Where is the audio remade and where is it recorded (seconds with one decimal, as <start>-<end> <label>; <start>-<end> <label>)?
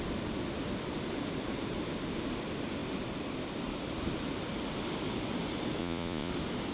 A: 0.0-5.8 recorded; 5.8-6.3 remade; 6.3-6.7 recorded